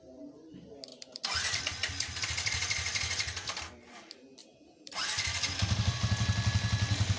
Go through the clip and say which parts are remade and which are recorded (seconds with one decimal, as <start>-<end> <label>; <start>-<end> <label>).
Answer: 0.0-0.9 recorded; 0.9-1.6 remade; 1.6-4.4 recorded; 4.4-5.9 remade; 5.9-7.2 recorded